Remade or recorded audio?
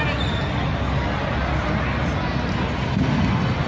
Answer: recorded